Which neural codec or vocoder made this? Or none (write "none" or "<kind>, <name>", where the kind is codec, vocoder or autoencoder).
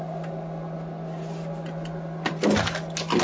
none